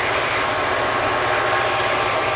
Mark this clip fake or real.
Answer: real